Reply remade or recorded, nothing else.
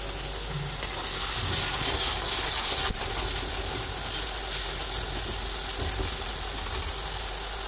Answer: recorded